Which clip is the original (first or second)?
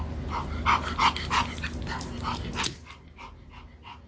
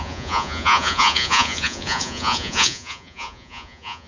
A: first